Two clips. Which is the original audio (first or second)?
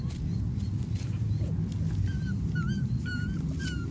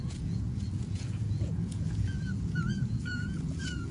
first